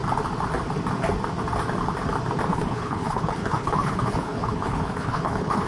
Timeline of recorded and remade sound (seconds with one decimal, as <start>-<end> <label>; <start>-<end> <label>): 0.0-2.5 recorded; 2.5-5.7 remade